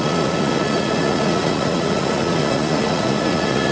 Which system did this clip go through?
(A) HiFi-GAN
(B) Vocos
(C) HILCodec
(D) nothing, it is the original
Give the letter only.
B